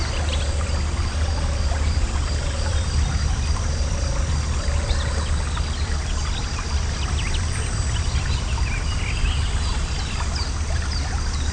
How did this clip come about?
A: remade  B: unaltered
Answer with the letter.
B